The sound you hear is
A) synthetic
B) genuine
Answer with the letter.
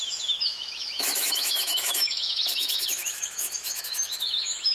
A